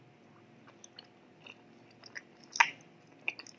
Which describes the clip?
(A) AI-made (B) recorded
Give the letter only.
B